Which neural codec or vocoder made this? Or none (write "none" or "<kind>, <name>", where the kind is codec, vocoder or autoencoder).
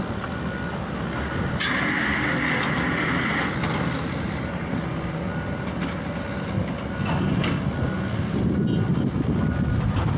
none